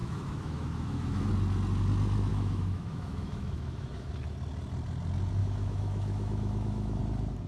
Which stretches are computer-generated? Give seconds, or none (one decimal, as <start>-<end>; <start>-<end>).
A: 0.0-1.3; 2.3-4.1; 5.4-7.0